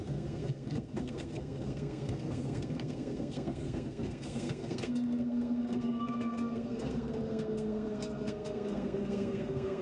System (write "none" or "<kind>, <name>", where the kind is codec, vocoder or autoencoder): codec, SNAC